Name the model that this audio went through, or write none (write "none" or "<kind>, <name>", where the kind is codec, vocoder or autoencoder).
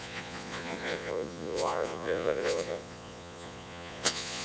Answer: vocoder, Vocos